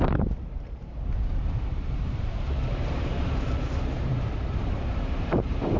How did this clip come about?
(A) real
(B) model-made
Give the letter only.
B